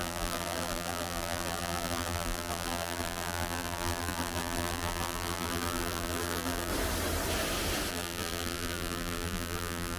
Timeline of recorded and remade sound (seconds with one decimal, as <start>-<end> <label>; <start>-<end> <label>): 0.0-6.7 remade; 6.7-7.9 recorded; 7.9-10.0 remade